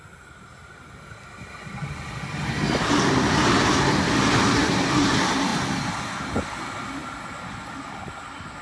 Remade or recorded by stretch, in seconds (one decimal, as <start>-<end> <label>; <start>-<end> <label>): 0.0-8.6 recorded